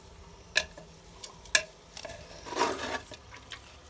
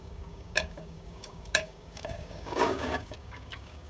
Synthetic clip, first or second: second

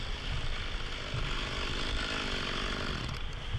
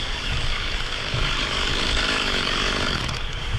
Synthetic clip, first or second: second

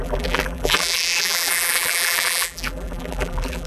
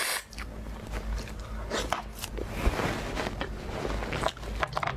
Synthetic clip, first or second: first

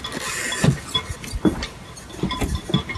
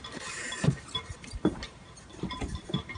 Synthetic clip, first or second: second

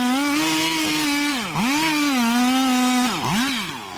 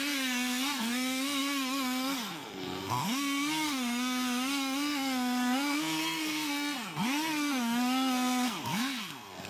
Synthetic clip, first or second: second